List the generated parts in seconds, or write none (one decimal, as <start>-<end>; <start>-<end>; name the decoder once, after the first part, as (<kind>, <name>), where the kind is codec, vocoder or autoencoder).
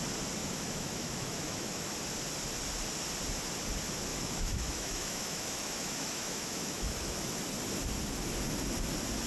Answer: 0.4-2.0 (autoencoder, DAC-VAE); 4.1-7.4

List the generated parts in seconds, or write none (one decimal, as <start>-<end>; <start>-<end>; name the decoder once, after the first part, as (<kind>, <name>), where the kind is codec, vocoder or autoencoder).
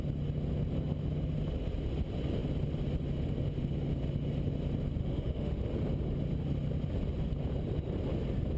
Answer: 5.0-5.6 (autoencoder, DAC-VAE)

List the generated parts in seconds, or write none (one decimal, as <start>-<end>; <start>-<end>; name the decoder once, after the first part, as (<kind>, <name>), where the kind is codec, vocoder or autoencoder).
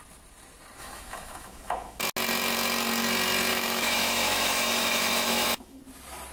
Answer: 0.8-2.0 (autoencoder, DAC-VAE); 3.5-5.8